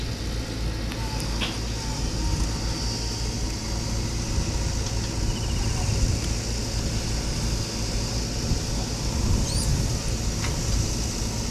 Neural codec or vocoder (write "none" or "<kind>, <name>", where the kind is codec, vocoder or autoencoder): none